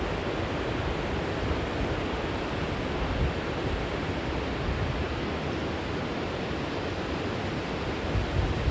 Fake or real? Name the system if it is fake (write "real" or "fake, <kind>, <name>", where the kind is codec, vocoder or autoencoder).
real